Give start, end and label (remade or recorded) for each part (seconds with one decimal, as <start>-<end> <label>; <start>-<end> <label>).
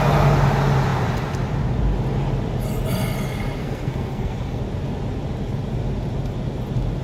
0.0-3.6 recorded; 3.6-4.6 remade; 4.6-7.0 recorded